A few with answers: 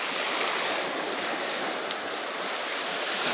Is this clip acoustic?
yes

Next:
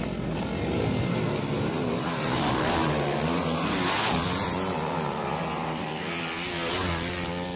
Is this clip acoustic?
yes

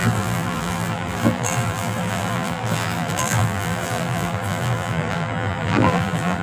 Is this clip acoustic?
no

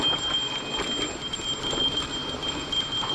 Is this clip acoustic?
yes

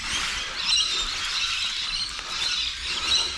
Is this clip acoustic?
yes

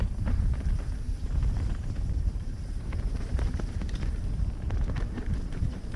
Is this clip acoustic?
no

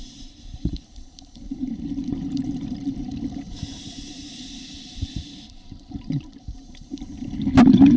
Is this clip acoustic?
no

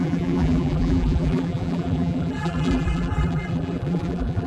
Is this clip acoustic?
no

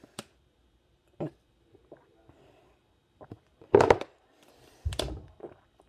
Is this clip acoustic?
no